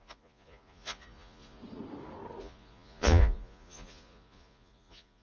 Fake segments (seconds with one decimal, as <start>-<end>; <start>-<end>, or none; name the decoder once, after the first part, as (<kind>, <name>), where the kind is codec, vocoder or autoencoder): 0.0-1.6 (vocoder, Vocos); 2.4-5.2